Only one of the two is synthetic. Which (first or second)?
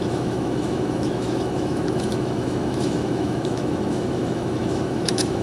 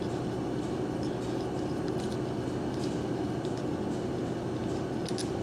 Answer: first